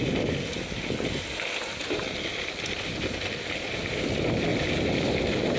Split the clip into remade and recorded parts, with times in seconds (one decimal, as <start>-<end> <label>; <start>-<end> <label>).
0.0-5.6 recorded